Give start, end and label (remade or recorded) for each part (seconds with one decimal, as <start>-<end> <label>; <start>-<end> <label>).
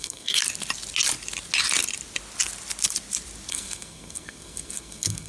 0.0-0.4 remade; 0.4-3.5 recorded; 3.5-5.3 remade